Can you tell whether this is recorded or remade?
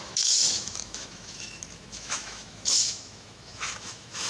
remade